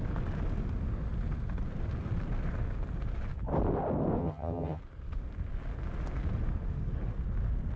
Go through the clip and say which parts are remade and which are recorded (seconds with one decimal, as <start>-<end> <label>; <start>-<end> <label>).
0.0-4.2 recorded; 4.2-4.8 remade; 4.8-7.8 recorded